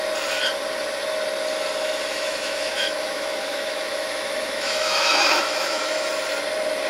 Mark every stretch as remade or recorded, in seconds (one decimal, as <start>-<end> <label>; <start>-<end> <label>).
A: 0.0-2.0 recorded; 2.0-6.1 remade; 6.1-6.9 recorded